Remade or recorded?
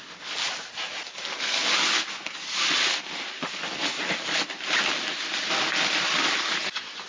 recorded